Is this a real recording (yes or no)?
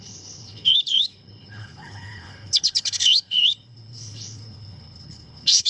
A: no